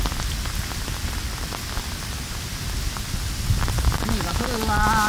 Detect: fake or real real